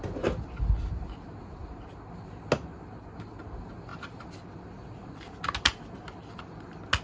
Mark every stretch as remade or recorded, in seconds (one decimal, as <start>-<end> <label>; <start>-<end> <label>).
0.0-7.0 recorded